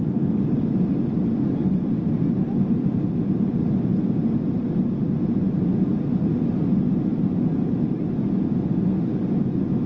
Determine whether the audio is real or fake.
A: real